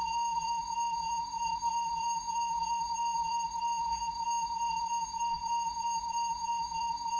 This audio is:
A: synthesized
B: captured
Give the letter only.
A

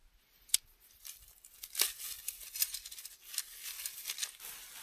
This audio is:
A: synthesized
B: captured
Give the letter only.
B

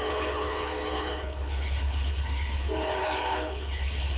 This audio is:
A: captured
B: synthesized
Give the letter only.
B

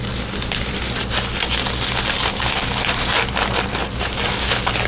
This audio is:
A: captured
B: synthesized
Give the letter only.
A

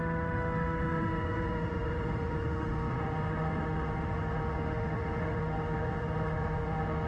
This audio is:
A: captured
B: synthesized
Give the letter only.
B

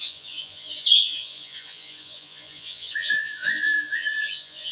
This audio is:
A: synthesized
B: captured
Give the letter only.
A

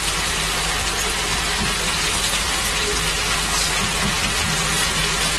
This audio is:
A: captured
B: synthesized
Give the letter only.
A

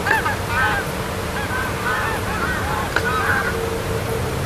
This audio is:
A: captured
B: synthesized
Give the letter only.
A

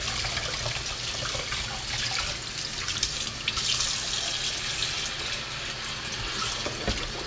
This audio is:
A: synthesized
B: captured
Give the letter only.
B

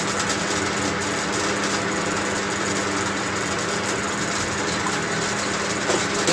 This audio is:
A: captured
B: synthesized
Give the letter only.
A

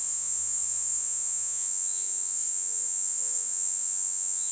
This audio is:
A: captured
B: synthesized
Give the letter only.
B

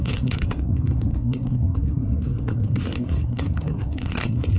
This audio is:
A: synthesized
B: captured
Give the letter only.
A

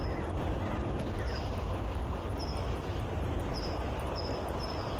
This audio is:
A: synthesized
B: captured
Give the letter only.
B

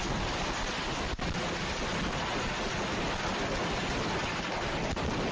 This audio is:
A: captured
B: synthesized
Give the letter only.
A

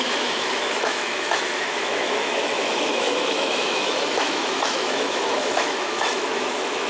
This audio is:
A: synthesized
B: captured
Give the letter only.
A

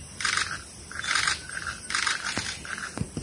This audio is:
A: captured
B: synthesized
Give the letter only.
A